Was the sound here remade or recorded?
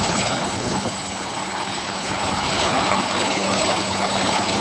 remade